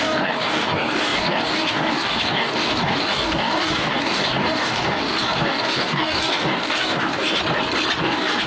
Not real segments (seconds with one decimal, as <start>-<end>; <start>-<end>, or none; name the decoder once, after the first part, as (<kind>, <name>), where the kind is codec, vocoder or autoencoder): 0.0-7.4 (codec, DAC); 8.0-8.5

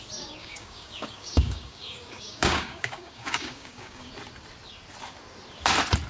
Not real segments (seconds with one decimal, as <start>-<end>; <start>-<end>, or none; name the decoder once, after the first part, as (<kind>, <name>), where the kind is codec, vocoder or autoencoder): 0.4-4.1 (codec, DAC)

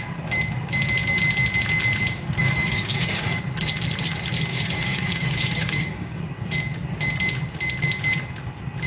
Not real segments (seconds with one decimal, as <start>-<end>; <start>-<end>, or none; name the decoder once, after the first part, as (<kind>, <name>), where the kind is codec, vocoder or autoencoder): 2.4-3.4 (codec, DAC); 4.5-6.2

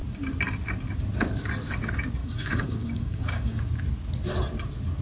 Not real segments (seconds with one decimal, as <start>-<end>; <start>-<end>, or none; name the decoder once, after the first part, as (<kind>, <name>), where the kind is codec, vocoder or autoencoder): 2.2-3.6 (codec, DAC)